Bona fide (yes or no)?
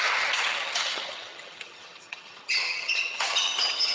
no